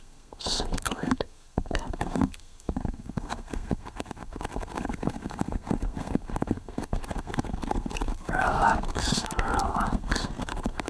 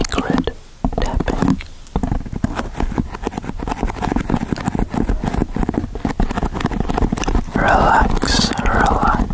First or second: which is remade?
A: first